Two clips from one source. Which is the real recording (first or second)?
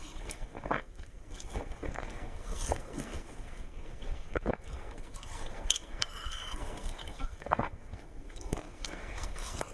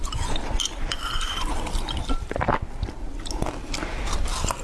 second